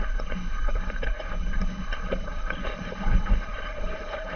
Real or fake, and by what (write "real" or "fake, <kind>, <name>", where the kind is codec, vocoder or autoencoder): fake, codec, HILCodec